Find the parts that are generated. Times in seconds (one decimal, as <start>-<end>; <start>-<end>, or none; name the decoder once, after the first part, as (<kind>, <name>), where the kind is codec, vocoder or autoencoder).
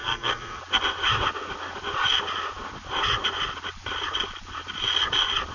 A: 0.0-0.6 (codec, SNAC)